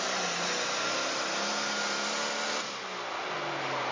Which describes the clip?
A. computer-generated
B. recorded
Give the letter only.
B